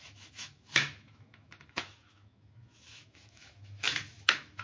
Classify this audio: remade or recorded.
remade